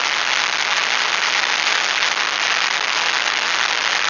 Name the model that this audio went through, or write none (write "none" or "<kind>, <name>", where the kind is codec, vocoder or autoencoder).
none